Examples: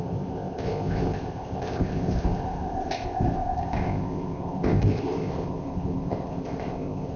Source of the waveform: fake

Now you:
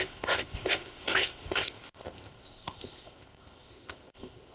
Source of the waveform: fake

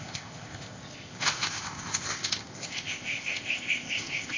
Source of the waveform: fake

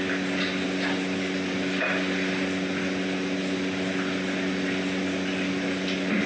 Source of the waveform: real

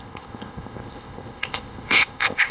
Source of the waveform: fake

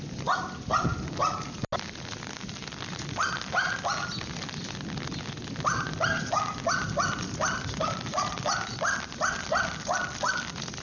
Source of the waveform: real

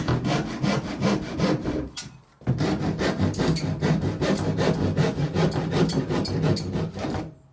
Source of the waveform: real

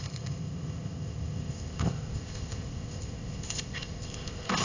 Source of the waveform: fake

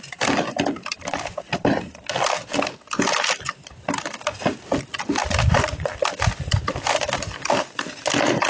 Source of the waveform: real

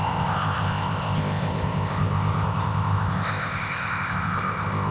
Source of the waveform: fake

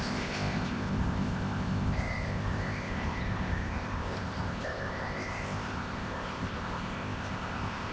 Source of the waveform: fake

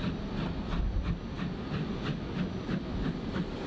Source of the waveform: real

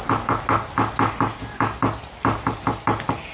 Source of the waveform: real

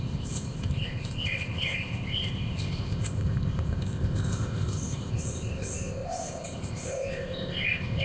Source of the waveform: fake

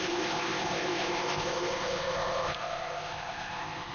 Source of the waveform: fake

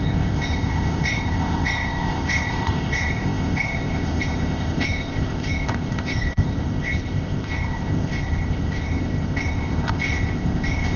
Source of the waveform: fake